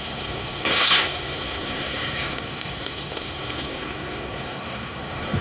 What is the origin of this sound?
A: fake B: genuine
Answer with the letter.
A